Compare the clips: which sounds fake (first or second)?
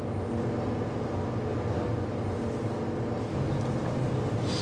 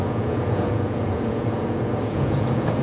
second